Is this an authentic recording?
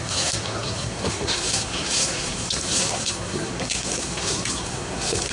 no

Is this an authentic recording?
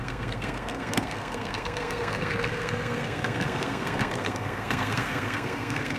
no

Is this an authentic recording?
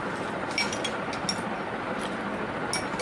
yes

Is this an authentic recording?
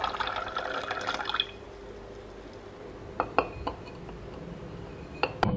yes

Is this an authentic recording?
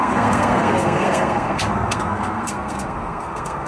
no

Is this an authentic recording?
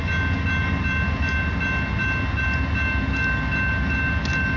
yes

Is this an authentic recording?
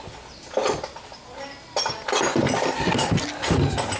yes